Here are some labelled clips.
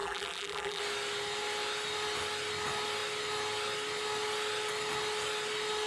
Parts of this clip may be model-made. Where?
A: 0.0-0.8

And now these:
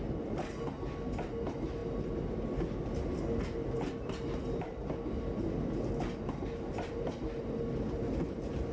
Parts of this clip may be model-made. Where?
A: none